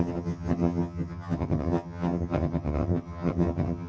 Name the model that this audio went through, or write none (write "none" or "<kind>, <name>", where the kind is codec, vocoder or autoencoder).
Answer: vocoder, HiFi-GAN